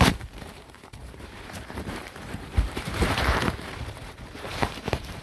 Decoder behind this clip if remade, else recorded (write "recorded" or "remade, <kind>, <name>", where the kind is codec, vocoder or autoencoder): remade, vocoder, BigVGAN v2